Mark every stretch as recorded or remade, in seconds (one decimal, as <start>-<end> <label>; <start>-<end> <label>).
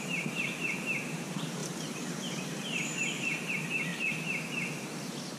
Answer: 0.0-1.6 remade; 1.6-3.5 recorded; 3.5-3.9 remade; 3.9-5.4 recorded